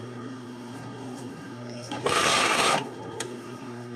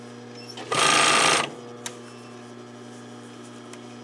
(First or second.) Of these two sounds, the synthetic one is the first